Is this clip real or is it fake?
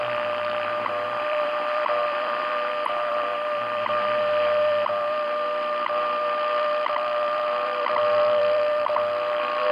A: fake